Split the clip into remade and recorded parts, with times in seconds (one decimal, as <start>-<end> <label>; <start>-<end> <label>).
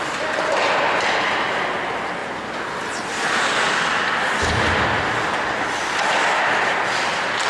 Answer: 0.0-7.5 recorded